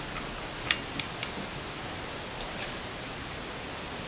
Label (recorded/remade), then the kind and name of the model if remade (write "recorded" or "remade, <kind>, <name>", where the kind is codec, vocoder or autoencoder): recorded